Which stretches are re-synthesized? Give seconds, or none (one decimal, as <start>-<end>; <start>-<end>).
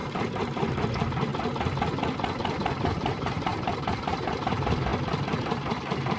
0.0-1.3; 2.8-4.9; 5.4-6.2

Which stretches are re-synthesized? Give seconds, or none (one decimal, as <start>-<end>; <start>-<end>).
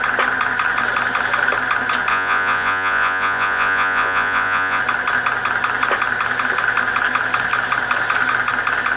2.1-4.8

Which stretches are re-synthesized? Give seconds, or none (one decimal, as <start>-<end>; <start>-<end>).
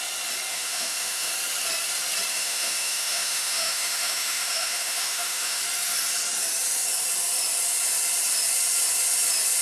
0.5-1.3; 2.3-5.6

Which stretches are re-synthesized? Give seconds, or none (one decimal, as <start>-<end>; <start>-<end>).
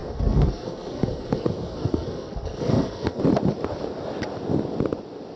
0.0-3.2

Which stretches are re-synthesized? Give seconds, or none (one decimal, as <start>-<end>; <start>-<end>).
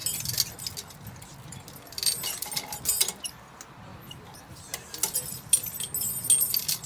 3.9-4.4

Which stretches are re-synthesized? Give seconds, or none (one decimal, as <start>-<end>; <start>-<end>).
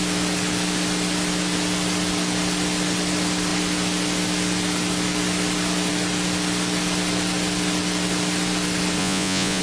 9.0-9.6